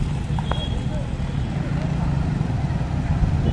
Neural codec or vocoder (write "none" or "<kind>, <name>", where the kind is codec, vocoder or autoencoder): none